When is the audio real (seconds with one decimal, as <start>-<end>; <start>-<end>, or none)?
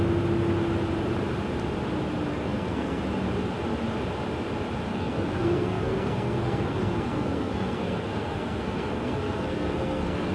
0.0-2.3; 3.0-4.9